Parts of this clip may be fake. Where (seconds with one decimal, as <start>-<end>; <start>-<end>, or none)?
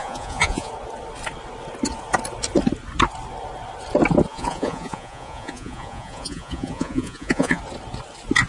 0.0-0.7; 4.3-7.6